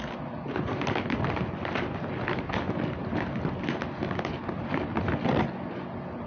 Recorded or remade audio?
recorded